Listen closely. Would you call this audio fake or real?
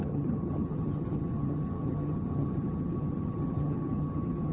fake